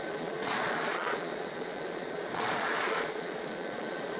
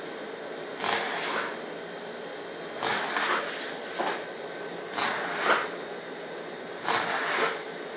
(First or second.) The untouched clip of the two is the second